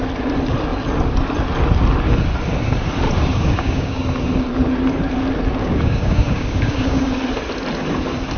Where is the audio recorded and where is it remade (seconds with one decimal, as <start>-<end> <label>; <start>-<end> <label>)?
0.0-3.3 recorded; 3.3-4.0 remade; 4.0-5.6 recorded; 5.6-7.1 remade; 7.1-8.4 recorded